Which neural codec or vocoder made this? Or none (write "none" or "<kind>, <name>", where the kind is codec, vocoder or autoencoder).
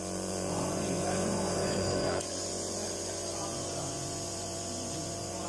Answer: vocoder, Vocos